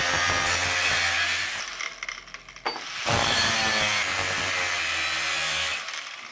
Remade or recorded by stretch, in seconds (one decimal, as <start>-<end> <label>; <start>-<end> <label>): 0.0-5.7 recorded; 5.7-6.3 remade